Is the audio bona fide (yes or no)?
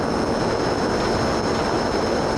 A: yes